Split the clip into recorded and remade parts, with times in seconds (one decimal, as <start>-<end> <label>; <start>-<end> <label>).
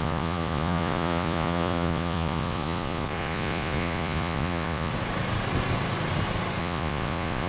0.0-4.9 remade; 4.9-6.6 recorded; 6.6-7.5 remade